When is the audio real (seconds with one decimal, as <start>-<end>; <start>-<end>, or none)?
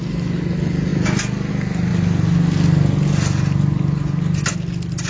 0.0-5.1